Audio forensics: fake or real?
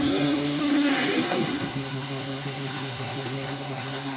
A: fake